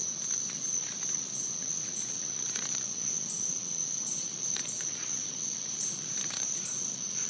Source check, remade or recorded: remade